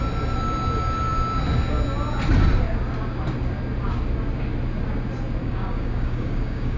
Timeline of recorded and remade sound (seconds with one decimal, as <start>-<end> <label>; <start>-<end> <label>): 0.0-5.4 recorded; 5.4-6.8 remade